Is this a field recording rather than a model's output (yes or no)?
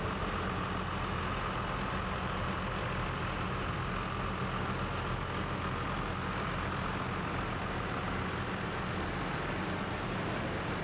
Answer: yes